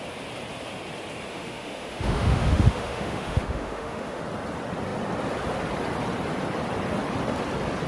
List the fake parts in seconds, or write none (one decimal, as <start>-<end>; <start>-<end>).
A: 1.3-4.2